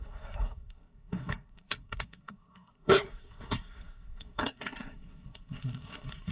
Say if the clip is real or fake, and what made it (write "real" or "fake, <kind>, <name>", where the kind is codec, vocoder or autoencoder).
fake, codec, SNAC